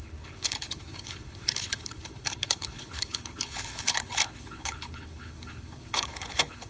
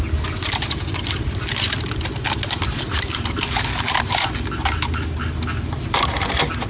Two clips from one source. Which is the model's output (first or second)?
first